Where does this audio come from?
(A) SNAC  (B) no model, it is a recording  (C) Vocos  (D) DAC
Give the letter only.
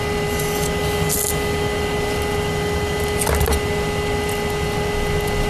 B